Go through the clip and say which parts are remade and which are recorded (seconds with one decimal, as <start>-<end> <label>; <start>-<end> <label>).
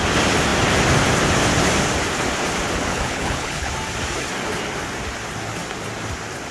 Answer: 0.0-2.9 recorded; 2.9-3.7 remade; 3.7-6.5 recorded